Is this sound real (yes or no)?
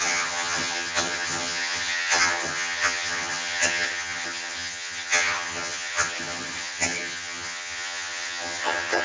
no